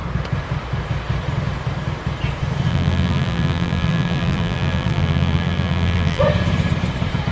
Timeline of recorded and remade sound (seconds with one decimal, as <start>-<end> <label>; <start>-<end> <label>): 0.0-2.7 recorded; 2.7-6.2 remade; 6.2-7.3 recorded